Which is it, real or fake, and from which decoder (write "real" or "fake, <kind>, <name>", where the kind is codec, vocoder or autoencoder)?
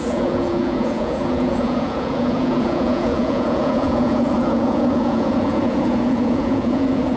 fake, vocoder, Vocos